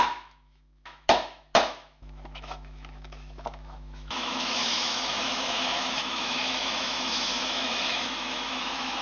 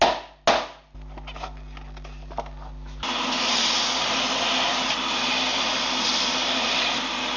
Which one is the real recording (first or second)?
second